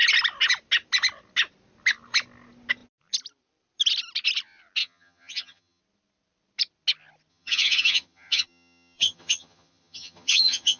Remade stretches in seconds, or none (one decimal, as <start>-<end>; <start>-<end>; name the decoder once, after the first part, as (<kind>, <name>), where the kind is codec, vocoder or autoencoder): 4.8-5.8 (vocoder, HiFi-GAN); 7.3-10.8